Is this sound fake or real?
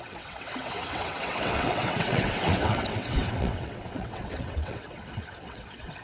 fake